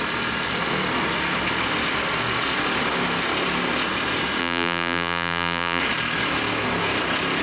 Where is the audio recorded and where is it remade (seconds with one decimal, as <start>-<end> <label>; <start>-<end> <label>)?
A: 0.0-4.4 recorded; 4.4-5.8 remade; 5.8-7.4 recorded